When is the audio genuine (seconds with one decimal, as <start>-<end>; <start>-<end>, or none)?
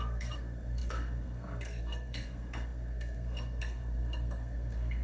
none